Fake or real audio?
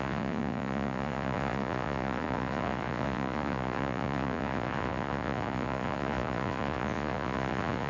fake